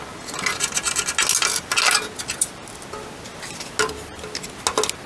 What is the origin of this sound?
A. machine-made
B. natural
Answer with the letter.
B